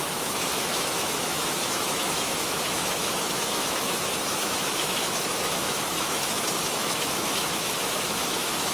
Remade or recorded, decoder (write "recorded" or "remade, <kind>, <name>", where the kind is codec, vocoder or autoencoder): remade, autoencoder, DAC-VAE